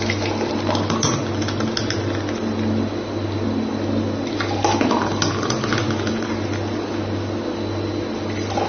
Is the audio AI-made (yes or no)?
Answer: no